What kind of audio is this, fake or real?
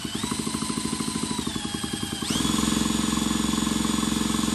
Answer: real